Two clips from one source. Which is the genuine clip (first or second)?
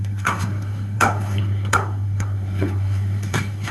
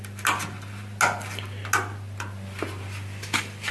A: second